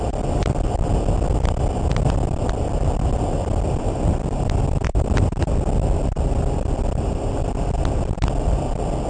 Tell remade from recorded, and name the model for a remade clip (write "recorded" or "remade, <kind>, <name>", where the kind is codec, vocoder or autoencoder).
recorded